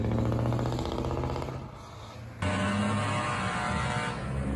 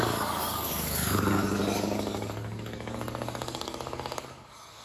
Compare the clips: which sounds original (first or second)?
first